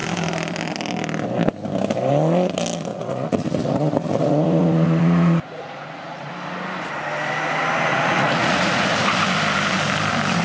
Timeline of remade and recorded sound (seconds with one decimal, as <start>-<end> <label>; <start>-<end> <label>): 0.0-2.9 recorded; 2.9-6.3 remade; 6.3-7.9 recorded; 7.9-8.8 remade; 8.8-10.4 recorded